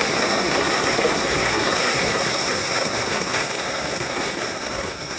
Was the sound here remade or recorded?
remade